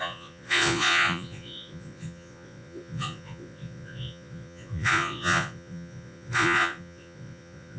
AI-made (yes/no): yes